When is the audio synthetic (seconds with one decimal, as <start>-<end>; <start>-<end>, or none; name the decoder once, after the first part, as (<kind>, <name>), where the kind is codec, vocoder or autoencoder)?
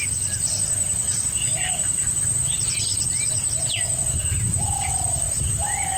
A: 0.0-2.9 (vocoder, BigVGAN v2); 4.0-6.0